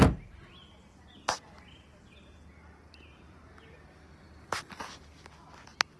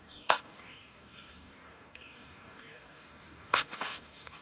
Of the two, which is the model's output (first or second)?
second